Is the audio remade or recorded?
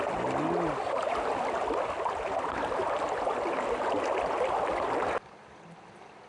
recorded